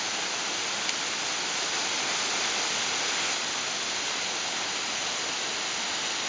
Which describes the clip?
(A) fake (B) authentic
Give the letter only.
B